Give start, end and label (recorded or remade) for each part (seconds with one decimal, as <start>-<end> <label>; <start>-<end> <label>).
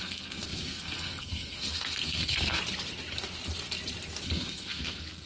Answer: 0.0-2.6 remade; 2.6-4.2 recorded; 4.2-5.3 remade